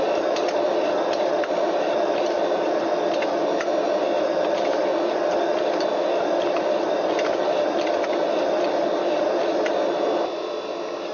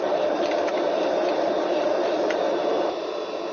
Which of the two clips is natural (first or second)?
first